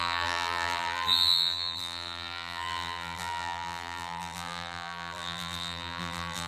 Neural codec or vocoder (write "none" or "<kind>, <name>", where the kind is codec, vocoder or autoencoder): vocoder, BigVGAN v2